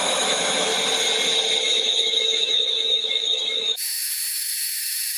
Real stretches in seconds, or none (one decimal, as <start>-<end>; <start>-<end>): 0.7-1.6